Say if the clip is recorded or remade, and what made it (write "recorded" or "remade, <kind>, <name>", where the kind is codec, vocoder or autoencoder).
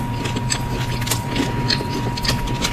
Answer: recorded